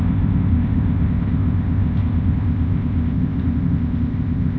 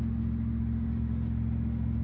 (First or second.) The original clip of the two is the second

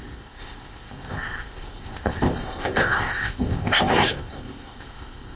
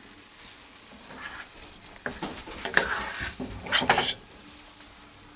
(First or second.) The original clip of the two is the second